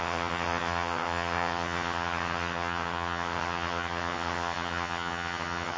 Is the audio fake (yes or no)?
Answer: yes